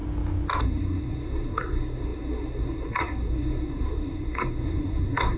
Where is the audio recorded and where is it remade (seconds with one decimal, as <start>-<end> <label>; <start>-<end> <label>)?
0.0-0.6 recorded; 0.6-5.4 remade